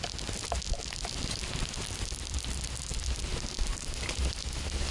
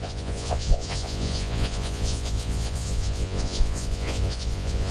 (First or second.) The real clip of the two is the first